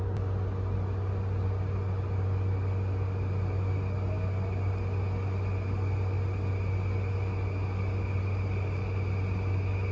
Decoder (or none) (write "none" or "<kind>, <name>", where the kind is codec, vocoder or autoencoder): none